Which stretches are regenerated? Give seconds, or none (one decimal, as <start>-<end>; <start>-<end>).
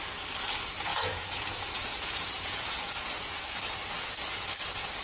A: 0.9-3.4